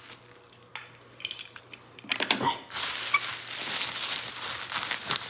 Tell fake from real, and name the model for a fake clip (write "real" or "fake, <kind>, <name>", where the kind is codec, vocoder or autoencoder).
real